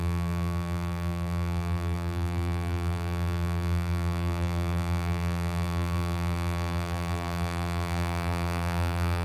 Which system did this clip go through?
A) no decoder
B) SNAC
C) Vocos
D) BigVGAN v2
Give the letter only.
D